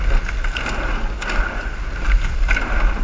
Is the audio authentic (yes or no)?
yes